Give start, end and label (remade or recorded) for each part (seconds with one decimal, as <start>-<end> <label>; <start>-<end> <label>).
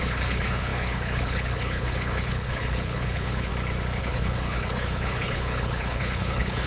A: 0.0-3.5 remade; 3.5-4.0 recorded; 4.0-6.7 remade